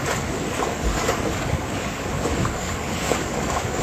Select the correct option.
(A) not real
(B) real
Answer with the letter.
A